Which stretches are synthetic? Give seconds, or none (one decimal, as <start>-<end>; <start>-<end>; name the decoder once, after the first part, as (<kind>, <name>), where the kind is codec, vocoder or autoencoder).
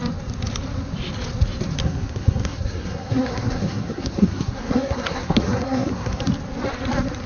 1.8-6.2 (codec, SNAC)